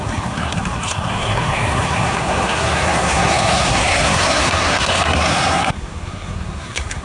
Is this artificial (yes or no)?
yes